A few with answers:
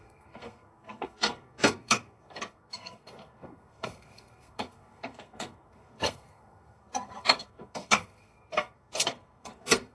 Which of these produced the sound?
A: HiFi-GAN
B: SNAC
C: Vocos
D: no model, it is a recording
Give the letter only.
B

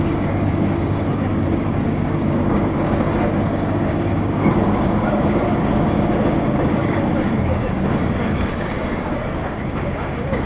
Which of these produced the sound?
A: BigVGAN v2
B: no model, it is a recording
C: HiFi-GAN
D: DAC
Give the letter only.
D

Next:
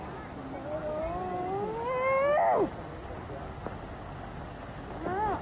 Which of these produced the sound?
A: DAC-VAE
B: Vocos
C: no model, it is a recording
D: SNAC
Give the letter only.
C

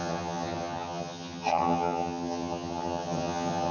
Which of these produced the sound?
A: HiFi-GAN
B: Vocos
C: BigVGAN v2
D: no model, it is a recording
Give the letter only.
A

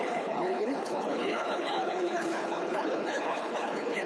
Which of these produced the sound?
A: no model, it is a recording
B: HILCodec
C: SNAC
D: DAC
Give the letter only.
B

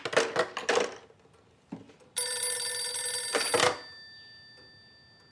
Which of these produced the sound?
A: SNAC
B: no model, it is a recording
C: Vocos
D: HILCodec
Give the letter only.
B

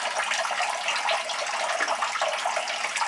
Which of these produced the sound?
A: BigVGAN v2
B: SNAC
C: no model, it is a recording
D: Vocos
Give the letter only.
C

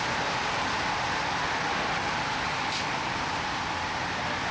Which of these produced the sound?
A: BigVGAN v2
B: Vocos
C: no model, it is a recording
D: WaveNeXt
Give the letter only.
C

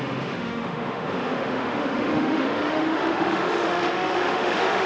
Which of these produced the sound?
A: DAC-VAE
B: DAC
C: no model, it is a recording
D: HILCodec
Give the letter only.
A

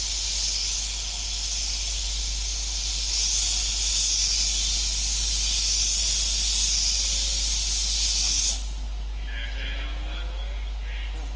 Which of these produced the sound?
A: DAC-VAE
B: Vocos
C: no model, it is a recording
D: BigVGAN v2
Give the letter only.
C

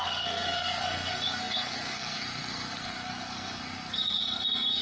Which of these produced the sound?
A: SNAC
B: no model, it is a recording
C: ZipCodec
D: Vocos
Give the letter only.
A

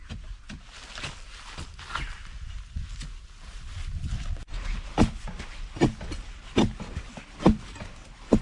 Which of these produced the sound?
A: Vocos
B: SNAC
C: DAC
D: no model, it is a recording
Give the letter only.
D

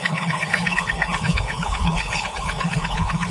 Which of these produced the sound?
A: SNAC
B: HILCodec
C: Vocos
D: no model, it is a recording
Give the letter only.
B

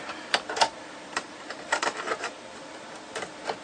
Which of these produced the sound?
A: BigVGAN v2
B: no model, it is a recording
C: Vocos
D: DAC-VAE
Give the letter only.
A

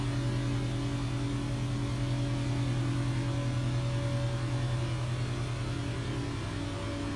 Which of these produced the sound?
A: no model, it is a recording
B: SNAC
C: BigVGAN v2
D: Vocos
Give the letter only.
A